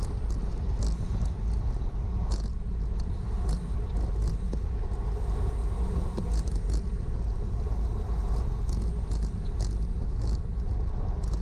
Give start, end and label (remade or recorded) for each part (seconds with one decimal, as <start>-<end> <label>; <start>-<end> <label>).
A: 0.0-10.0 recorded; 10.0-10.7 remade; 10.7-11.4 recorded